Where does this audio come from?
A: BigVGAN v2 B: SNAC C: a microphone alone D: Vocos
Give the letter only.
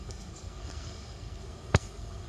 B